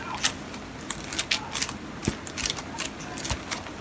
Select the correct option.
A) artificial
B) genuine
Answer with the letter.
B